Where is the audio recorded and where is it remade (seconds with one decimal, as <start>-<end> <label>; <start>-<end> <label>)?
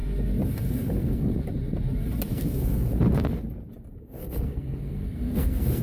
0.0-0.7 recorded; 0.7-1.3 remade; 1.3-2.3 recorded; 2.3-2.9 remade; 2.9-4.0 recorded; 4.0-5.8 remade